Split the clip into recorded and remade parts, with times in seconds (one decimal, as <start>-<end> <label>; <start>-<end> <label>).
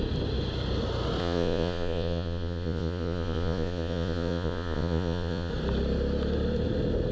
0.0-1.2 recorded; 1.2-5.5 remade; 5.5-7.1 recorded